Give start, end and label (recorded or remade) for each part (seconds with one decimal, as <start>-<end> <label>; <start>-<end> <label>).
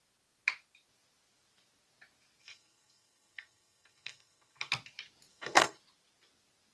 0.0-2.4 recorded; 2.4-4.7 remade; 4.7-5.3 recorded; 5.3-5.8 remade; 5.8-6.7 recorded